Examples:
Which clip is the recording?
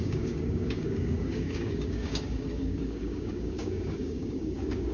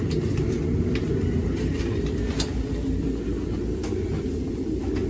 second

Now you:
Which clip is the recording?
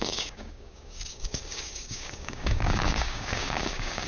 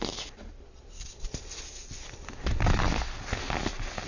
second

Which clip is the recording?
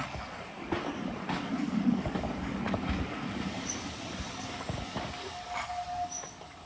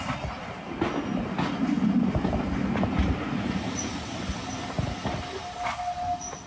second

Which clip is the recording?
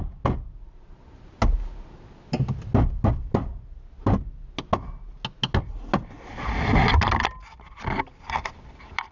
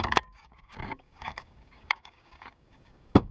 first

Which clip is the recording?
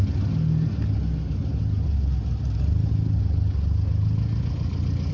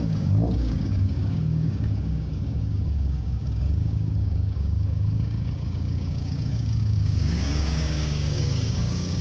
first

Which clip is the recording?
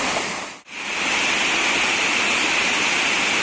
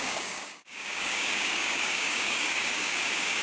first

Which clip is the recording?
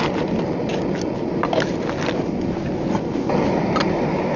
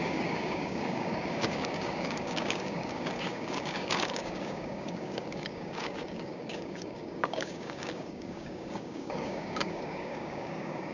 first